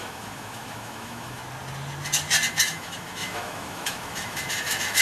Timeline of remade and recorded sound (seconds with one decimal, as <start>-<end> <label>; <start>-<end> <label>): 0.0-1.4 remade; 1.4-2.5 recorded; 2.5-5.0 remade